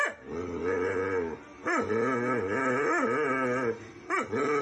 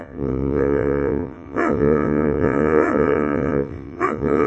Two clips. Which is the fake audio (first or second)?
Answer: second